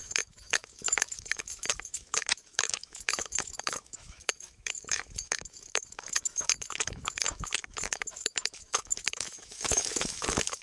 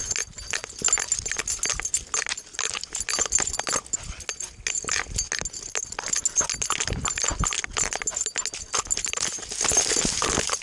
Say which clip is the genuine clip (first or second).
second